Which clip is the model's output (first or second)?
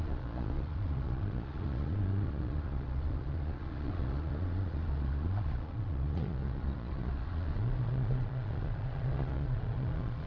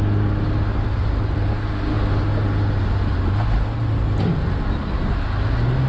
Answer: first